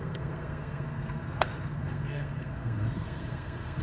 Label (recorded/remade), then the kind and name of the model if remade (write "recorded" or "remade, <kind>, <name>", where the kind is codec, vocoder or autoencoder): remade, codec, SNAC